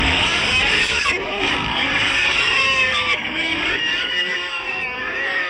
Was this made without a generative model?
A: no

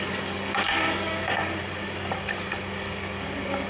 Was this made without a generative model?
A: no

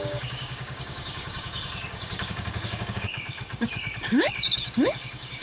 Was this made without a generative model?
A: no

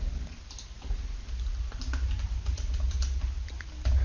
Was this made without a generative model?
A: yes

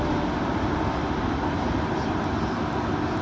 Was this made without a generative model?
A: yes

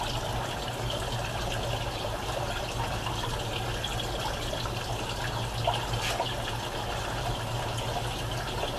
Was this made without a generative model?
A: yes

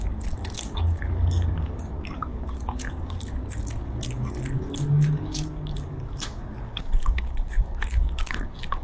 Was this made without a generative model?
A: no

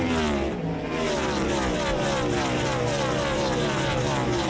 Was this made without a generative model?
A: yes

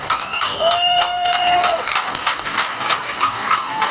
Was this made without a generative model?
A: no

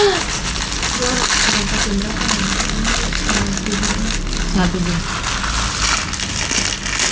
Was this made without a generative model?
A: yes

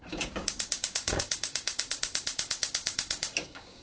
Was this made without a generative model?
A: no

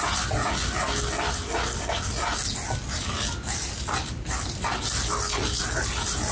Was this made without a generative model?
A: yes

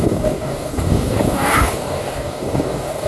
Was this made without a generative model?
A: no